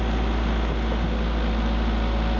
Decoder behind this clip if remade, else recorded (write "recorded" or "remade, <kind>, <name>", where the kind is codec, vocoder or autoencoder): recorded